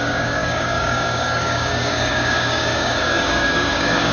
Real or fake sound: fake